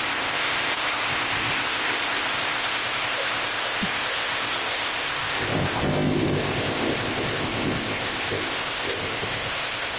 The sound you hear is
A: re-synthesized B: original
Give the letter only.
A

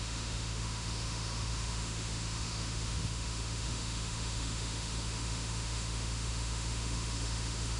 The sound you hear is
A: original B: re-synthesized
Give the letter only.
B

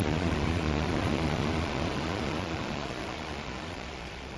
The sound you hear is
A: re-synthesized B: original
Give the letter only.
A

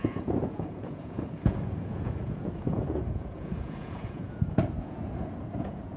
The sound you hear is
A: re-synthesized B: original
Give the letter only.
A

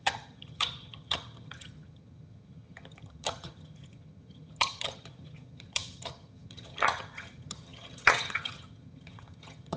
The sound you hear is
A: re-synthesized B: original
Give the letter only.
A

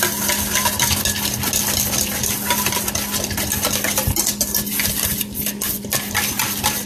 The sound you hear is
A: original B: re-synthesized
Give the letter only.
A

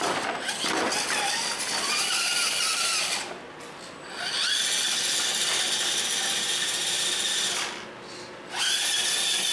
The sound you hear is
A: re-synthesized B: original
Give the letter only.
B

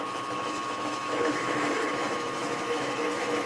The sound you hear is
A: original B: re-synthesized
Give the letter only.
B